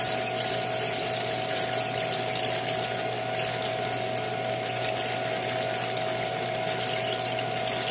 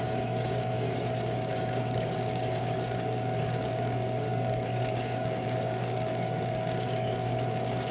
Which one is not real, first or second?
second